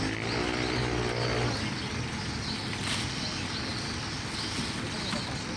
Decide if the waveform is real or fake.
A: real